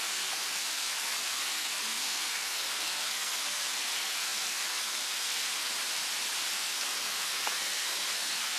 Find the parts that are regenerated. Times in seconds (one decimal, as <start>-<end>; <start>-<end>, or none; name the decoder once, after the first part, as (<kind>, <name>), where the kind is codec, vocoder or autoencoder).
0.0-5.7 (codec, SNAC); 6.5-8.6